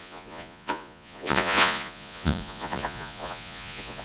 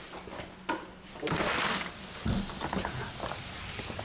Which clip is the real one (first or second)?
second